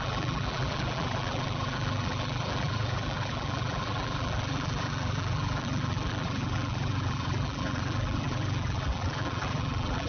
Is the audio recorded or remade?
remade